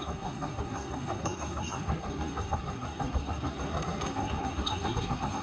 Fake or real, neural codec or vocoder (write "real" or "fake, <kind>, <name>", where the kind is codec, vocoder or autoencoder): fake, codec, SNAC